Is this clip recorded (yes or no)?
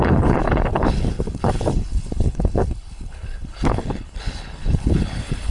no